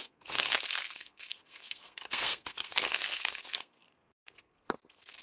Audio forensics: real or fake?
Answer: fake